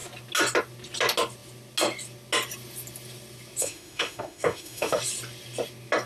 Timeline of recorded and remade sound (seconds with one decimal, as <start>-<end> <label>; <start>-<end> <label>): 0.0-3.6 recorded; 3.6-5.0 remade; 5.0-6.1 recorded